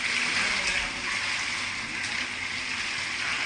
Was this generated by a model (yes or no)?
no